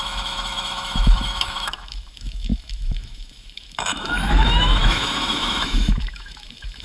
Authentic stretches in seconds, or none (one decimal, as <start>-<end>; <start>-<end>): none